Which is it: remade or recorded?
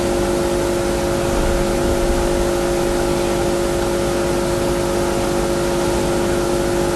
recorded